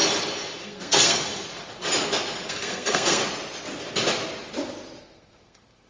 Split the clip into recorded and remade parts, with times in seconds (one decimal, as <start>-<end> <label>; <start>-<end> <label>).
0.0-0.6 recorded; 0.6-1.3 remade; 1.3-2.5 recorded; 2.5-3.2 remade; 3.2-5.0 recorded; 5.0-5.9 remade